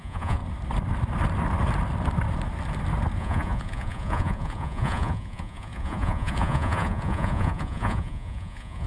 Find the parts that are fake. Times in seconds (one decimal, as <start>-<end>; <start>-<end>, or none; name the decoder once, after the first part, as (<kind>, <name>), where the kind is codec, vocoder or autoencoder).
0.0-0.4 (vocoder, Vocos); 3.2-8.9